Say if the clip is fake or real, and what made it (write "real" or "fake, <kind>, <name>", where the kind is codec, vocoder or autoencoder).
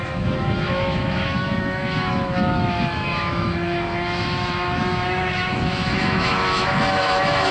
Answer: fake, autoencoder, DAC-VAE